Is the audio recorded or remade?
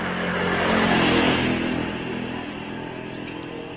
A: recorded